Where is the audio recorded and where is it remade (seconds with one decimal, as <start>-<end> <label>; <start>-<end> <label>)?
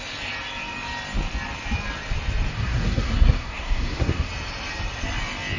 0.0-2.5 recorded; 2.5-4.3 remade; 4.3-5.6 recorded